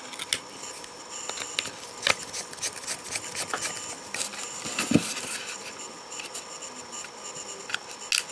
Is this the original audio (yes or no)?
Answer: yes